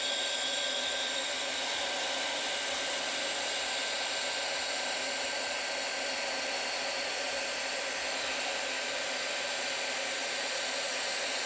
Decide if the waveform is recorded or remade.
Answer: recorded